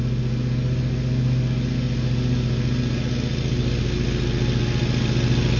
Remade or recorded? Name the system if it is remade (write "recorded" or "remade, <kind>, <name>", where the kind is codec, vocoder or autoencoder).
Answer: recorded